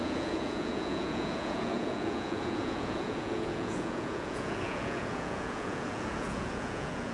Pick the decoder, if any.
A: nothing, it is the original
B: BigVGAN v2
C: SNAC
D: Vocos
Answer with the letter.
D